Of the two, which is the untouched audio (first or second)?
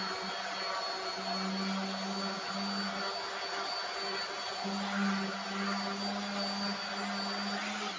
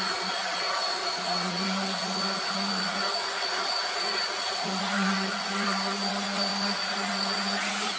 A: first